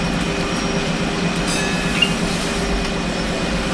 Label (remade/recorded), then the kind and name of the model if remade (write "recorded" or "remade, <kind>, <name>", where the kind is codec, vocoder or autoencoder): recorded